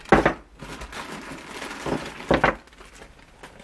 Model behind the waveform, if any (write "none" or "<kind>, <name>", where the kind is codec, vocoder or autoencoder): none